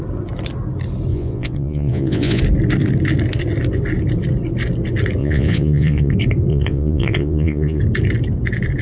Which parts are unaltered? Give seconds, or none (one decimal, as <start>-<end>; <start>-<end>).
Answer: 0.0-1.1; 2.4-5.2; 6.1-6.5; 7.8-8.8